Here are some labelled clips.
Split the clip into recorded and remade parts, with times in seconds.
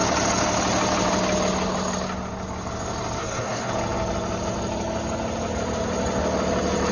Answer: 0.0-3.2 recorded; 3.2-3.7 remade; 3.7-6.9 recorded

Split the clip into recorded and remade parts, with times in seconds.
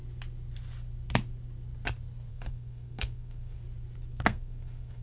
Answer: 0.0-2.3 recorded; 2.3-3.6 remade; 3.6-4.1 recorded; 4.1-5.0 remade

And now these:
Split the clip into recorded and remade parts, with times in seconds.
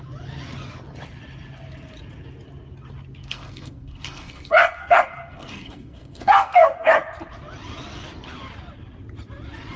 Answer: 0.0-3.2 recorded; 3.2-6.9 remade; 6.9-9.8 recorded